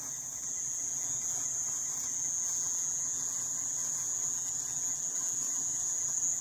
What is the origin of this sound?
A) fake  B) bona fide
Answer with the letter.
B